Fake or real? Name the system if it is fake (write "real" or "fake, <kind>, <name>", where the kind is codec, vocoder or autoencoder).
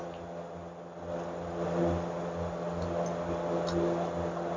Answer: real